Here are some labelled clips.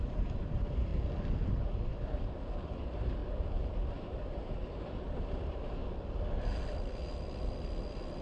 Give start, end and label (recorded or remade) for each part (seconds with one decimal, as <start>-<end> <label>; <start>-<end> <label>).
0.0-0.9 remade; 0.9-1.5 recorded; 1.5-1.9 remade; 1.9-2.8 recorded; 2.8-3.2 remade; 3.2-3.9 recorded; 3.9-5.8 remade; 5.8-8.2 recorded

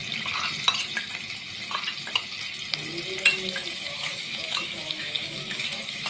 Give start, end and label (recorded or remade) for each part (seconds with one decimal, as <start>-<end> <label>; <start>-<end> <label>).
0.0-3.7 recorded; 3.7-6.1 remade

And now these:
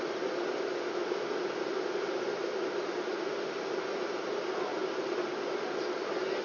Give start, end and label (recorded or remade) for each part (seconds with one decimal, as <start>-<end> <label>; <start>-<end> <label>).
0.0-6.4 recorded

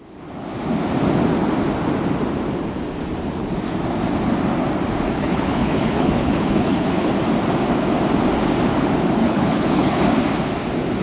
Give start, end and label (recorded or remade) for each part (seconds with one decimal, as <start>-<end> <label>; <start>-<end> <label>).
0.0-5.2 recorded; 5.2-7.1 remade; 7.1-9.2 recorded; 9.2-10.0 remade; 10.0-11.0 recorded